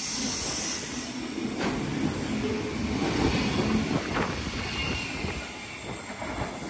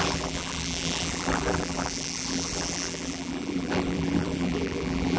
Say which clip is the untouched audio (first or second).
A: first